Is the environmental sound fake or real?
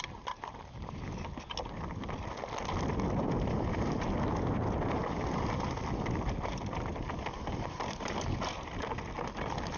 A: real